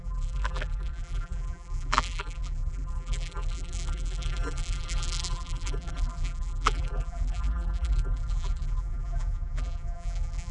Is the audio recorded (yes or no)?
no